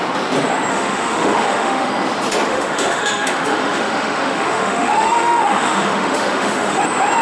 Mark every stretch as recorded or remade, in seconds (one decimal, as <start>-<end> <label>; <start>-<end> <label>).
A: 0.0-0.7 recorded; 0.7-1.9 remade; 1.9-2.5 recorded; 2.5-6.8 remade; 6.8-7.2 recorded